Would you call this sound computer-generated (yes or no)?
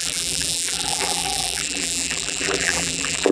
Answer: yes